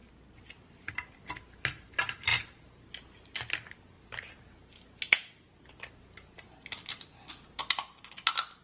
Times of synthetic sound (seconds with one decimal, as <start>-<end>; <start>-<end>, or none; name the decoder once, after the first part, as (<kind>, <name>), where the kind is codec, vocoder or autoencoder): none